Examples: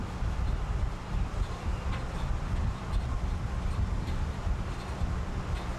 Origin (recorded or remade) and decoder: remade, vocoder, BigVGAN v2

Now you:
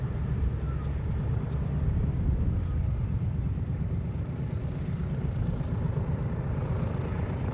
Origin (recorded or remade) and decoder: recorded